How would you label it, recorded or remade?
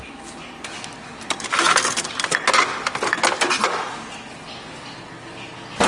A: recorded